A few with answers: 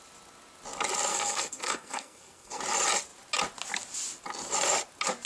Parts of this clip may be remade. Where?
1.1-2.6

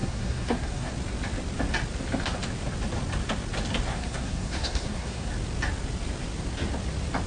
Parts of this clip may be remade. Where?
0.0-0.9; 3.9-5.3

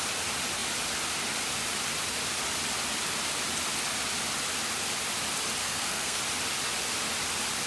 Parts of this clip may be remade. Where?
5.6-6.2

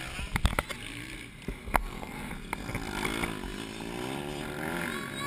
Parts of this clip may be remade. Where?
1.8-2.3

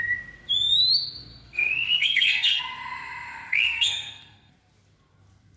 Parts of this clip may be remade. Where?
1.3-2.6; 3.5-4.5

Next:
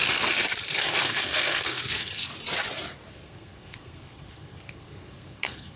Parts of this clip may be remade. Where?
0.6-2.3; 3.1-5.8

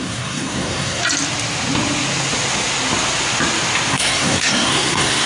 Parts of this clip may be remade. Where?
0.0-1.0; 3.9-5.3

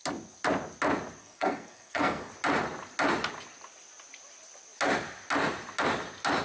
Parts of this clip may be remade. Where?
1.2-2.3